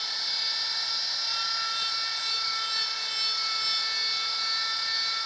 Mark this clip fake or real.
real